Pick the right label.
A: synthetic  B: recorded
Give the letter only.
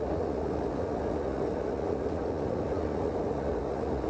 A